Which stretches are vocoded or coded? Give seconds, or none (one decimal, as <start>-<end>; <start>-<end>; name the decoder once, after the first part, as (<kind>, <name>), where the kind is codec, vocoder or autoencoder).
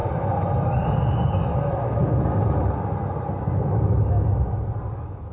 1.4-2.0 (autoencoder, DAC-VAE)